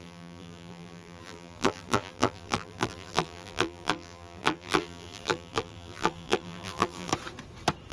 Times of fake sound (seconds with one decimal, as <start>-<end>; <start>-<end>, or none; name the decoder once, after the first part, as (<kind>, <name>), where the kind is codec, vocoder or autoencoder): 0.0-7.1 (vocoder, BigVGAN v2)